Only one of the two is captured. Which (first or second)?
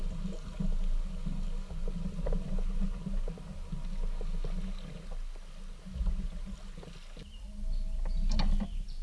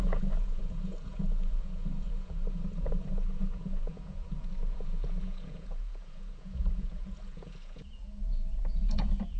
first